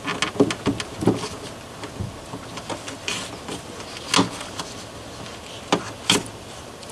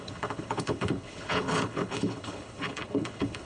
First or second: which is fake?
second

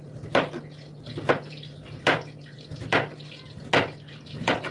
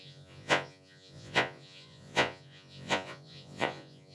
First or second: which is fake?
second